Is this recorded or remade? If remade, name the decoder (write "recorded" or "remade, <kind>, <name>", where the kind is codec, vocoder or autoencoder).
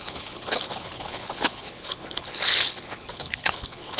remade, codec, HILCodec